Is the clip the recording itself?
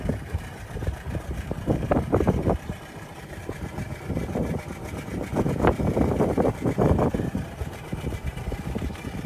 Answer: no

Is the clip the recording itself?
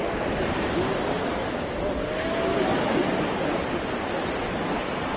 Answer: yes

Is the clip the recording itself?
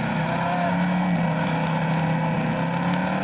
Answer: yes